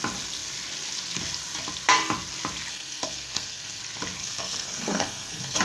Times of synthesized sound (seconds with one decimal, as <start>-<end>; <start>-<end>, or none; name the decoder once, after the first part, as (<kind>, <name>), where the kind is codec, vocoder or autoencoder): 2.7-3.8 (codec, SNAC); 4.2-5.6

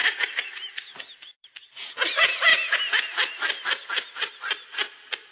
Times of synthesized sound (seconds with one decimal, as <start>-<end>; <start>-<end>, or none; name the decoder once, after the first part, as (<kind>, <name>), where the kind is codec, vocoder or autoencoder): 0.0-2.1 (vocoder, BigVGAN v2)

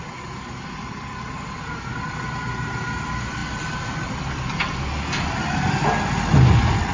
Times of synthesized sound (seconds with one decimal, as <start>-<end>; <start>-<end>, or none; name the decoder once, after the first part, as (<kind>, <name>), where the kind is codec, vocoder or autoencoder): none

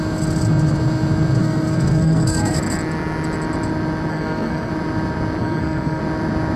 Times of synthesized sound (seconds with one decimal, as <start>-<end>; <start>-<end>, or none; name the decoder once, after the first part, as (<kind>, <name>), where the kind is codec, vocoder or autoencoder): 1.4-2.6 (codec, SNAC); 4.1-4.7; 5.4-6.0